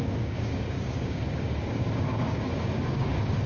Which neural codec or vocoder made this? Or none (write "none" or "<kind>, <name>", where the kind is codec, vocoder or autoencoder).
codec, DAC